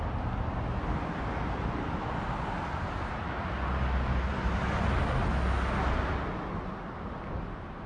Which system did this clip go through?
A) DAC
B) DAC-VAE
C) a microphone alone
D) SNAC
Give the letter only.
C